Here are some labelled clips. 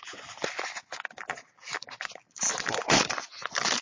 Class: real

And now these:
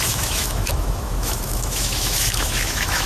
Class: fake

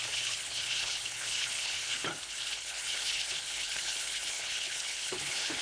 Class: fake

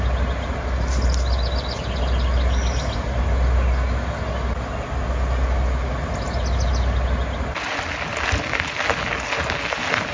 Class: real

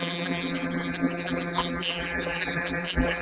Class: fake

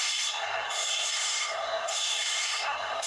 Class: fake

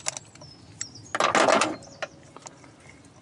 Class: real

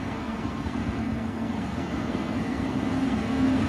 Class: fake